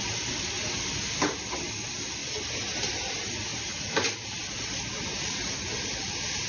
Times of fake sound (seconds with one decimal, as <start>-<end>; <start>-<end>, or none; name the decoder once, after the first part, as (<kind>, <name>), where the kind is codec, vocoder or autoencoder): none